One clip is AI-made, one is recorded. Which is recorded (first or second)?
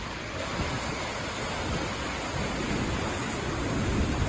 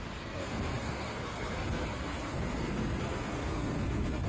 first